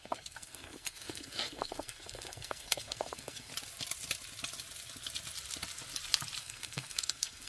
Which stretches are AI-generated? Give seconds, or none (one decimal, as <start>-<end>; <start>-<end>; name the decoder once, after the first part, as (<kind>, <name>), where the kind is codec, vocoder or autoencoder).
0.0-3.5 (codec, SNAC); 6.4-7.5